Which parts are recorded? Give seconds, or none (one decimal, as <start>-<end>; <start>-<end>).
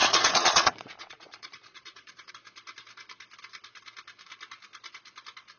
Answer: 2.3-5.6